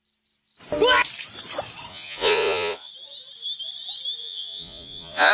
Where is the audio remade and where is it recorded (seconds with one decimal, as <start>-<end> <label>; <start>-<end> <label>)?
0.0-1.9 recorded; 1.9-2.9 remade; 2.9-4.2 recorded; 4.2-5.3 remade